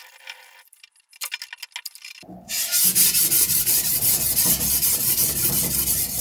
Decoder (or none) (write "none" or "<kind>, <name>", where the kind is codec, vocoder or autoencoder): none